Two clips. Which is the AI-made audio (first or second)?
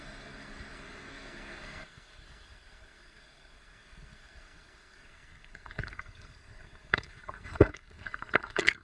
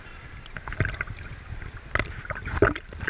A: first